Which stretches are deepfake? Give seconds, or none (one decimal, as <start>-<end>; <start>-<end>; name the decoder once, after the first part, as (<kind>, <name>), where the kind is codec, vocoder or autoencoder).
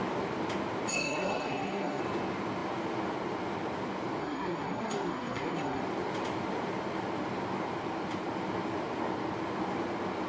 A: 0.9-2.0 (codec, SNAC); 4.2-5.8